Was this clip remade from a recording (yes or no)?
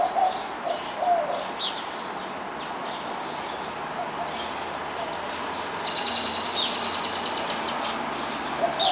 no